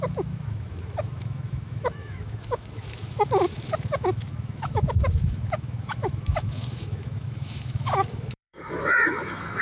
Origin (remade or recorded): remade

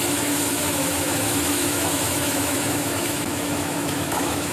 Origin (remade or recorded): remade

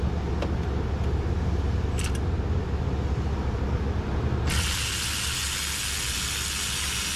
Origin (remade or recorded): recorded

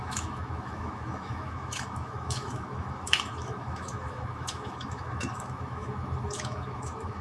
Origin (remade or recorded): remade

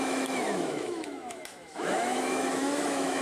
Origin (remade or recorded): remade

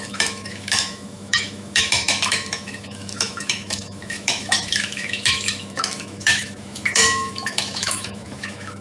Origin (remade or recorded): remade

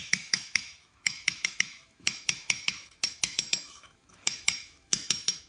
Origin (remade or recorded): remade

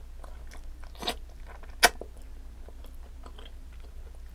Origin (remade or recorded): recorded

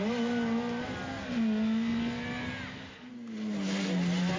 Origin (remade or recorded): recorded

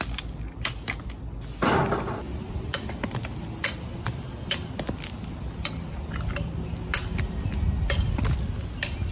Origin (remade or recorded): recorded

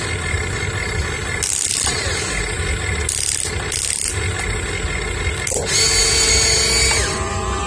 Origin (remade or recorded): recorded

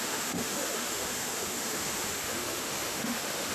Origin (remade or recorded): remade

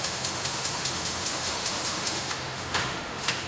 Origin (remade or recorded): remade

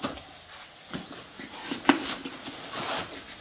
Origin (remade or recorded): recorded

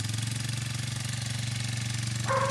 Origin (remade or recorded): recorded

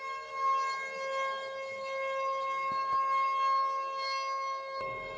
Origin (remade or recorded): remade